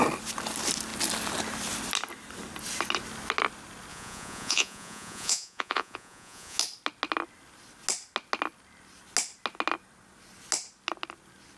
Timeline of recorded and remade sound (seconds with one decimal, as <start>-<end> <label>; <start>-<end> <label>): 0.0-3.9 recorded; 3.9-6.6 remade; 6.6-11.6 recorded